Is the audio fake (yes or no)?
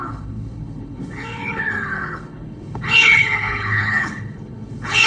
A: yes